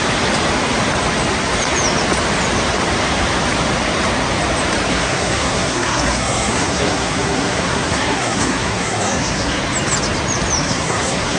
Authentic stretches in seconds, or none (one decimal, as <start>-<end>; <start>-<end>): 0.0-4.9; 9.6-10.6